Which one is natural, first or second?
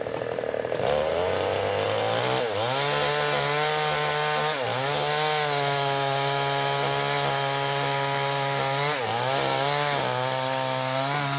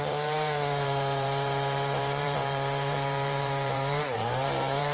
first